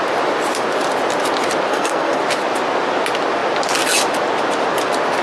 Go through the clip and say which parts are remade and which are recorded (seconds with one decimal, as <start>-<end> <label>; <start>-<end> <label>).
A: 0.0-1.7 recorded; 1.7-2.2 remade; 2.2-5.2 recorded